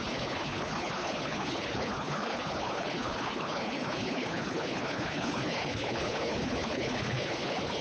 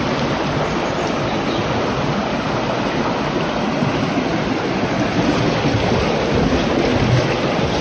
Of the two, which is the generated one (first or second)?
first